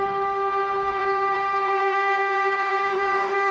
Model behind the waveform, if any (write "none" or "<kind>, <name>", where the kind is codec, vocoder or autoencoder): autoencoder, DAC-VAE